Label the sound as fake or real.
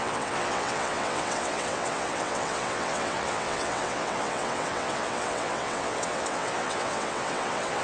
fake